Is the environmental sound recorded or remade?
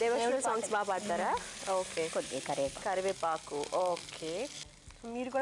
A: recorded